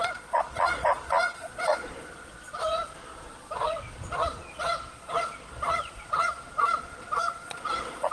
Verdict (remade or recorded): remade